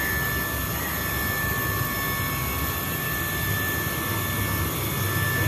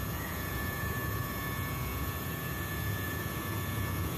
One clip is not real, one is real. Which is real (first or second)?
first